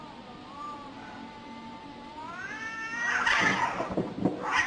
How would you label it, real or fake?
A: real